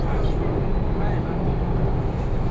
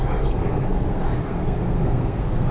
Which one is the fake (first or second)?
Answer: second